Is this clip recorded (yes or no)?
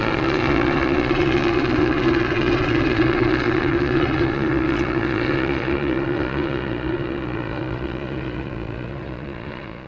no